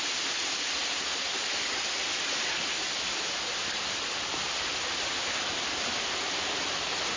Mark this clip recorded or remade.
recorded